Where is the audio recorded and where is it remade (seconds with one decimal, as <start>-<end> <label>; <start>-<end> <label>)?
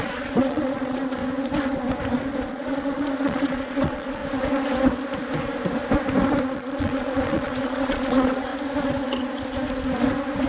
0.0-1.2 remade; 1.2-2.5 recorded; 2.5-4.2 remade; 4.2-6.4 recorded; 6.4-8.5 remade; 8.5-10.5 recorded